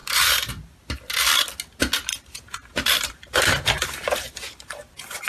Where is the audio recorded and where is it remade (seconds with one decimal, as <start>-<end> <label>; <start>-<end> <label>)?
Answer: 0.0-0.5 remade; 0.5-2.1 recorded; 2.1-5.3 remade